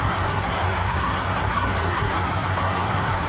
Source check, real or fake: fake